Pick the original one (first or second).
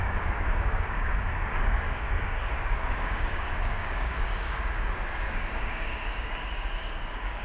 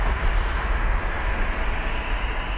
second